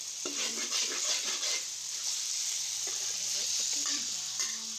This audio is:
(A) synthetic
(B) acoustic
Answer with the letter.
A